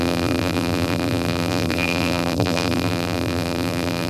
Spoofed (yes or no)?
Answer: yes